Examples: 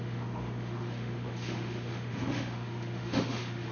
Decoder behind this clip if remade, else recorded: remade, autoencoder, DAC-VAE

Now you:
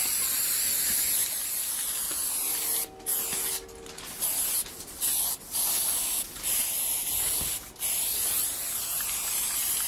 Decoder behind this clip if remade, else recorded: recorded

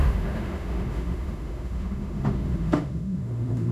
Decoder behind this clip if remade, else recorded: remade, autoencoder, DAC-VAE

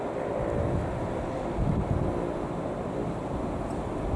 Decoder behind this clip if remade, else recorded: recorded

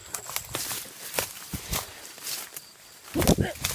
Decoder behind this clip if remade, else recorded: recorded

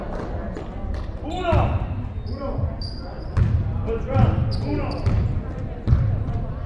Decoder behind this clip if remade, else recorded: recorded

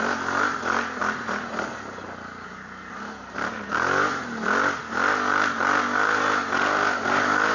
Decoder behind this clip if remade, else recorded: recorded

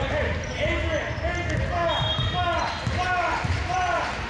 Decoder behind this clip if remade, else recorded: recorded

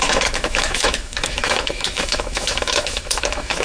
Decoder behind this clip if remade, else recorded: remade, autoencoder, DAC-VAE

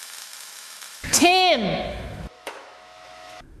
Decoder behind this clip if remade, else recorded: remade, autoencoder, DAC-VAE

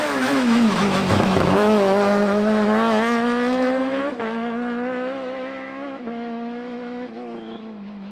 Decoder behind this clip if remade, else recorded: remade, autoencoder, DAC-VAE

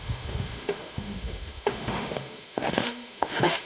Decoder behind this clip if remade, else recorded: remade, autoencoder, DAC-VAE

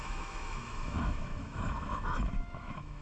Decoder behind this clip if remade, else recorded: remade, autoencoder, DAC-VAE